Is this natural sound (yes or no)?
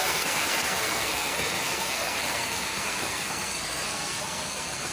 no